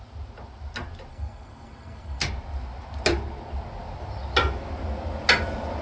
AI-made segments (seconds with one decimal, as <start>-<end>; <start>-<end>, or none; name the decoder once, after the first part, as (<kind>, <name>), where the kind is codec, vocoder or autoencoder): 1.1-2.2 (codec, SNAC)